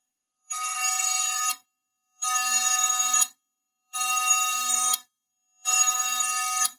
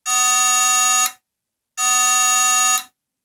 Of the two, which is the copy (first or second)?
first